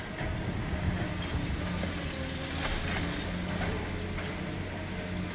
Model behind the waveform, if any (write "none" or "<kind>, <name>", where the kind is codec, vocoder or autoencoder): none